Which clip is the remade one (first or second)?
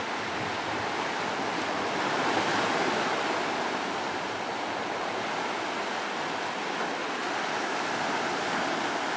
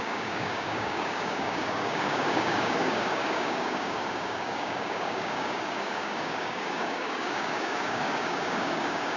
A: second